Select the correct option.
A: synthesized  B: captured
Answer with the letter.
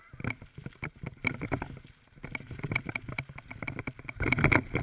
B